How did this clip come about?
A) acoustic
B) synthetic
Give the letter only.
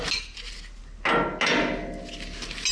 A